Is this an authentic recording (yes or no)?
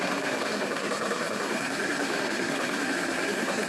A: no